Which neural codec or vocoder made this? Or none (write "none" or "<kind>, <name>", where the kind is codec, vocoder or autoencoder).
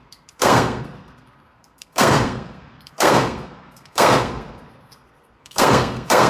codec, SNAC